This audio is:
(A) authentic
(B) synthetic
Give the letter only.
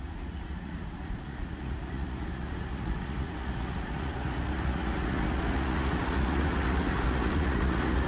B